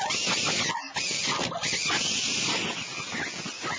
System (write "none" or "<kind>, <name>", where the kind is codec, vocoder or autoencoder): none